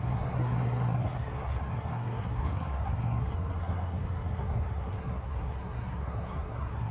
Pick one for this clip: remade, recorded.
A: remade